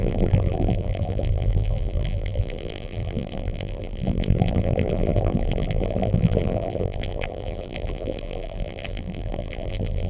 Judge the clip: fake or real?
fake